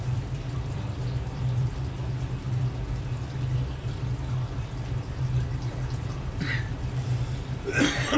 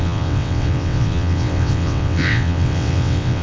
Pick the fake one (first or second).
second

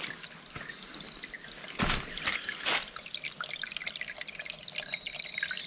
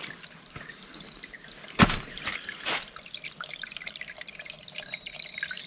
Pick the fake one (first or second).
second